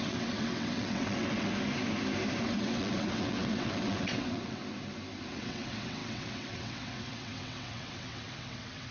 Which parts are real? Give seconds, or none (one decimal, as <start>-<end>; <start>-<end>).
1.5-2.4; 4.6-5.3